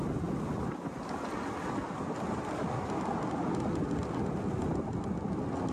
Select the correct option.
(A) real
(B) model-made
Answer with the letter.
A